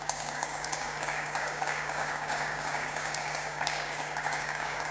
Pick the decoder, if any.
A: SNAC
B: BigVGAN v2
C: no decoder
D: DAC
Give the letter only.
D